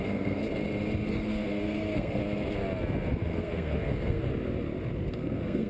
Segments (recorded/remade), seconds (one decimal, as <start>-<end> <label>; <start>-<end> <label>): 0.0-0.4 remade; 0.4-1.1 recorded; 1.1-2.2 remade; 2.2-3.1 recorded; 3.1-4.3 remade; 4.3-5.1 recorded; 5.1-5.7 remade